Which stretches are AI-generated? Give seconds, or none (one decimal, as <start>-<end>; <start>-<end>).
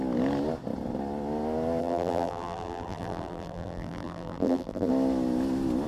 1.8-4.9